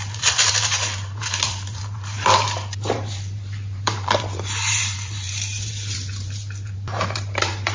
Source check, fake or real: fake